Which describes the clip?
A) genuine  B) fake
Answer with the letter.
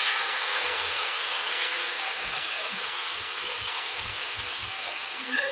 B